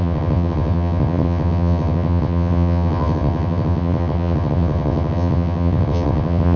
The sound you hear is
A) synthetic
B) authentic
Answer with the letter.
A